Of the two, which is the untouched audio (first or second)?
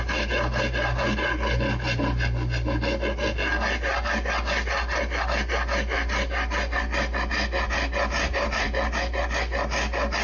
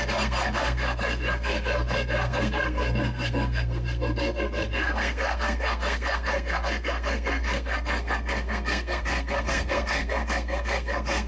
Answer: first